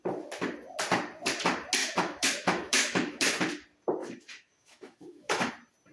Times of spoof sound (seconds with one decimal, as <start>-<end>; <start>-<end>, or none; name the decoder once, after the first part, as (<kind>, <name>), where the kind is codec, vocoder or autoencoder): 1.8-3.4 (autoencoder, DAC-VAE); 4.0-5.5